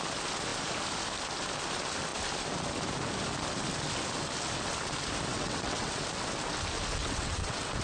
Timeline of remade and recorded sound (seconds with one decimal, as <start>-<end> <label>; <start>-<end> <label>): 0.0-5.3 recorded; 5.3-6.0 remade; 6.0-7.0 recorded; 7.0-7.8 remade